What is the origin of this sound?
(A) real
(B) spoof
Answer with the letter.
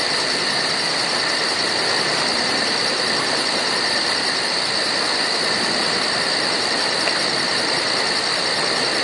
A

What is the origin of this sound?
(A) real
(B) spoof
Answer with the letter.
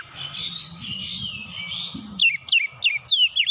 A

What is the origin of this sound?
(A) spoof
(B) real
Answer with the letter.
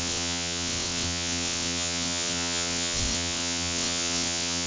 A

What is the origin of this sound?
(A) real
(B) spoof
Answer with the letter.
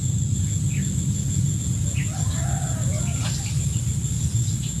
A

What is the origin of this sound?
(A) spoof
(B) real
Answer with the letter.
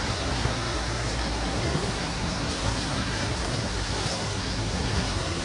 A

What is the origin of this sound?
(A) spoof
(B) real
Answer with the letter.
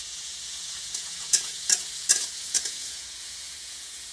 A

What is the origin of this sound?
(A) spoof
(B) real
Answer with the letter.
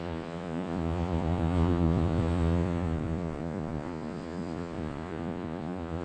A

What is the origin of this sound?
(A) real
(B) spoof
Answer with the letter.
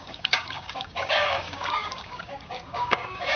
B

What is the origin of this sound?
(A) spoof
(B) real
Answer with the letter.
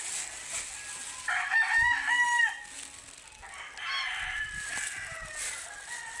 B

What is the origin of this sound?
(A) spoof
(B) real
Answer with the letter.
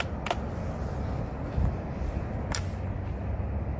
B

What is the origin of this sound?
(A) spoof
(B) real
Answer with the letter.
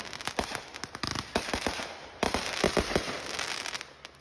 B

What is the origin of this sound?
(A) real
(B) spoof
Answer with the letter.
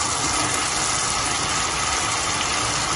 A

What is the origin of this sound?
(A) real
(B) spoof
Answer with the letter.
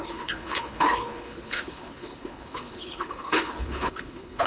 B